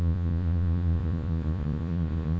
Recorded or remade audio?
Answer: remade